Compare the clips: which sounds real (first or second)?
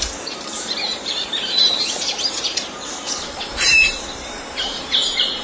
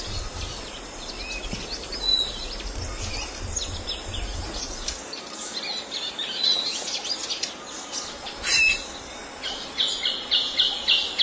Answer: second